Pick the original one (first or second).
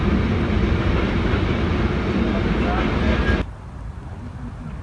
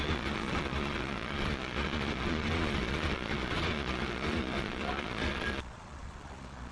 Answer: first